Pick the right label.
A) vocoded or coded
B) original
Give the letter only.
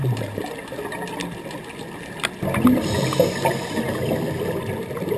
B